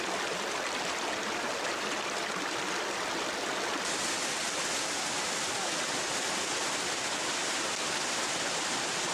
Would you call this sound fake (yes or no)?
no